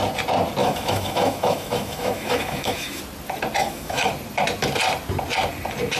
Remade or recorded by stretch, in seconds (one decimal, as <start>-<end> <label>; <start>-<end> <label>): 0.0-0.6 recorded; 0.6-3.0 remade; 3.0-3.6 recorded; 3.6-4.1 remade; 4.1-6.0 recorded